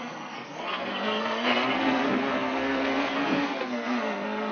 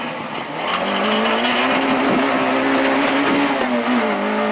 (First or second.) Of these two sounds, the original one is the second